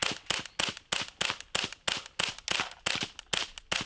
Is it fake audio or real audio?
real